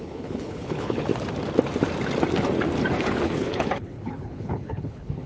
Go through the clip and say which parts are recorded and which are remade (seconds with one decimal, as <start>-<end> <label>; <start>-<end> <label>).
0.0-1.1 remade; 1.1-3.2 recorded; 3.2-5.3 remade